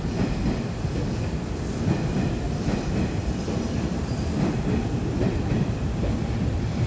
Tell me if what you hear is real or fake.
real